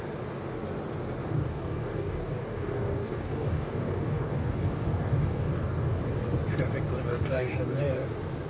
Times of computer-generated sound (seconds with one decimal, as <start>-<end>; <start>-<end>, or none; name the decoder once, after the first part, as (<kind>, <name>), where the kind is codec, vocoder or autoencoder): 1.2-6.0 (codec, DAC); 7.1-7.8